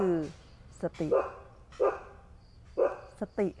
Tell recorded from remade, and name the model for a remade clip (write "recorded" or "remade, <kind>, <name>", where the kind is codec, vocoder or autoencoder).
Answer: recorded